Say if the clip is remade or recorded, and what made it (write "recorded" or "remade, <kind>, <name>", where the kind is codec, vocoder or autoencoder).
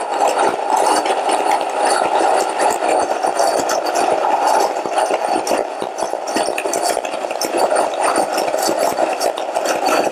remade, vocoder, BigVGAN v2